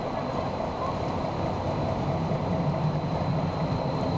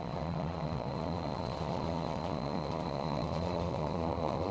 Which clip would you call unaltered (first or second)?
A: first